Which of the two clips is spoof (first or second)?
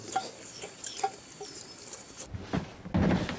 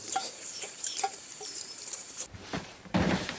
second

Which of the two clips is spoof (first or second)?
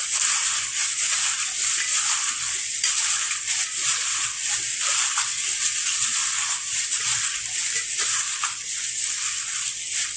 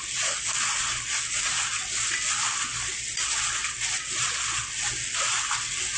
first